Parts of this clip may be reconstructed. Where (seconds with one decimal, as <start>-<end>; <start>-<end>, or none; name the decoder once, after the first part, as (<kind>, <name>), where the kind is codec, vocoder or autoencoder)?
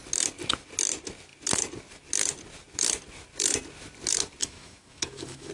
4.4-5.5 (autoencoder, DAC-VAE)